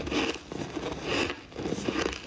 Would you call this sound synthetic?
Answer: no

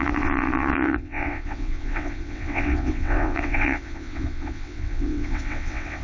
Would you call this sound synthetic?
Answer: yes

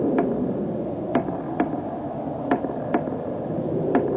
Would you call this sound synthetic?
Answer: no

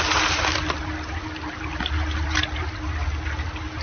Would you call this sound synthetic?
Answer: no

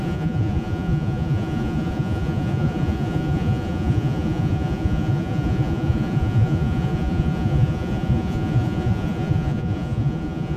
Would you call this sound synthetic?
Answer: yes